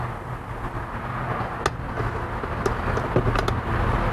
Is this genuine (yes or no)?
yes